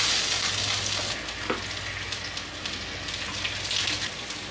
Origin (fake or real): real